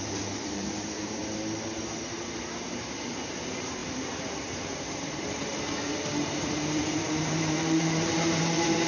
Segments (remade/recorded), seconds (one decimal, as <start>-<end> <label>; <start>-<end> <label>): 0.0-1.2 remade; 1.2-2.7 recorded; 2.7-8.9 remade